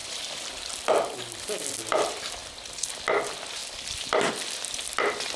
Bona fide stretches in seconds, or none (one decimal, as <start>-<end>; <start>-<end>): 2.4-2.9